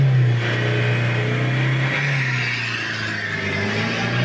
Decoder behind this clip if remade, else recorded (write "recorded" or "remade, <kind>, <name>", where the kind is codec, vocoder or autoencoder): recorded